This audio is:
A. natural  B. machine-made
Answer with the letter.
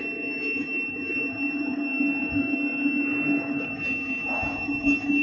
B